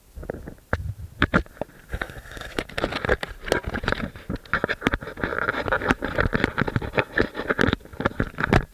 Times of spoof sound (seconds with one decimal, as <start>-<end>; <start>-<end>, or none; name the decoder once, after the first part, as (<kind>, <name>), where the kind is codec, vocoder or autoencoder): 1.9-2.6 (codec, SNAC)